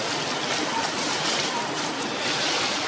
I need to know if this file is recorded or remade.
recorded